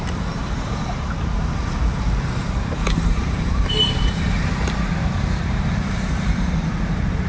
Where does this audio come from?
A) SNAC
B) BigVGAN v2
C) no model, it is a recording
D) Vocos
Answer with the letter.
B